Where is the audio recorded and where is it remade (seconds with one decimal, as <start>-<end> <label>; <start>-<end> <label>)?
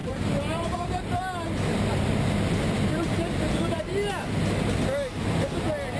0.0-1.2 remade; 1.2-2.9 recorded; 2.9-3.9 remade; 3.9-6.0 recorded